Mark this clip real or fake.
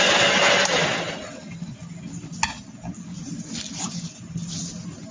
real